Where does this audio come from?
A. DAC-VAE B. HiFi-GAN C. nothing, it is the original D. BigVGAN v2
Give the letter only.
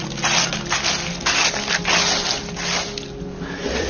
C